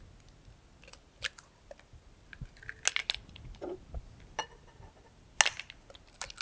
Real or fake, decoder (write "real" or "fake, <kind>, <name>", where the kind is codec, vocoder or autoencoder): real